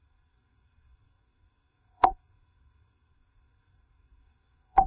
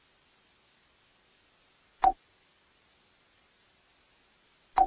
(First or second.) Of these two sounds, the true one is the second